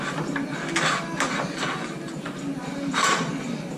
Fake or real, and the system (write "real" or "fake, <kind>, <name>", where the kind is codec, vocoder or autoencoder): real